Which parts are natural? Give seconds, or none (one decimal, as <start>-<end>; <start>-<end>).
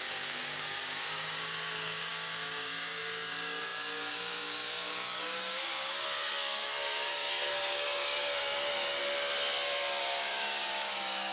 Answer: 9.0-10.0